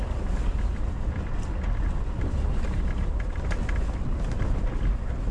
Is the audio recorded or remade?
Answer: recorded